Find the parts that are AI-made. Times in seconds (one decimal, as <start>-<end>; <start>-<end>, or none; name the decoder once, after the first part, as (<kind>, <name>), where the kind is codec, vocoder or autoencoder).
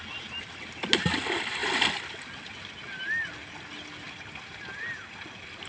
none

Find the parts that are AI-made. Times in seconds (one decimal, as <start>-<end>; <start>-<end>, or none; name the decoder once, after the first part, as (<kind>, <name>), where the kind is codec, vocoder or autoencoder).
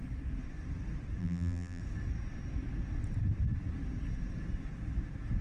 1.2-1.8 (vocoder, BigVGAN v2)